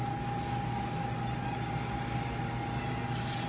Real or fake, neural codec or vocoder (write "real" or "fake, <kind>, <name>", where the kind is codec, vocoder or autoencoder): real